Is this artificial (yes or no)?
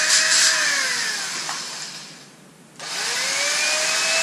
no